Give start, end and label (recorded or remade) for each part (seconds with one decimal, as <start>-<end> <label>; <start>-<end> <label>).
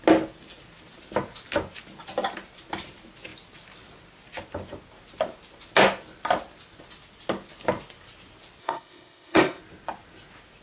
0.0-8.6 recorded; 8.6-9.6 remade; 9.6-10.6 recorded